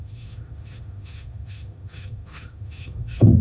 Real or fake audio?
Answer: fake